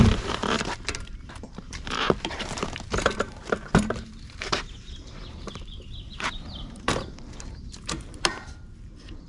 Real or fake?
fake